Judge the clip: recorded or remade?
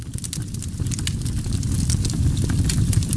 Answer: recorded